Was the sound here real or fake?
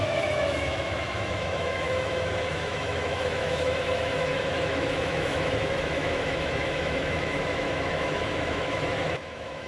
fake